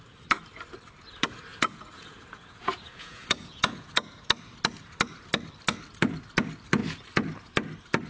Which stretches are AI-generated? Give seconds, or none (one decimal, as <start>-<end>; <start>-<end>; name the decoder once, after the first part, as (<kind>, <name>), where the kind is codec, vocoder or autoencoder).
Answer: 1.5-4.2 (vocoder, Vocos)